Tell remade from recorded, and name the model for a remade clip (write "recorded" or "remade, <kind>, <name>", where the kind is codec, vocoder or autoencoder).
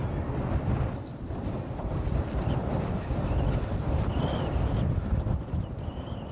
recorded